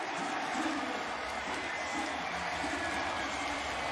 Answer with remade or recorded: recorded